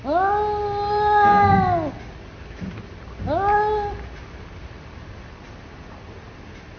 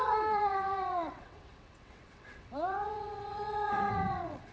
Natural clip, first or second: first